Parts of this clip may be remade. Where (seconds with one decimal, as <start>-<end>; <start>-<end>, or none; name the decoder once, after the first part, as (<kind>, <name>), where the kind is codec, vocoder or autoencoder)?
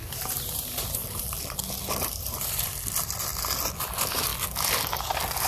0.0-3.3 (vocoder, BigVGAN v2); 3.8-4.3; 5.1-5.5